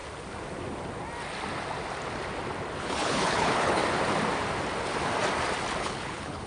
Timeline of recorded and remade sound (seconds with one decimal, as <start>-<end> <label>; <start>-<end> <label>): 0.0-2.8 recorded; 2.8-3.8 remade; 3.8-5.8 recorded; 5.8-6.5 remade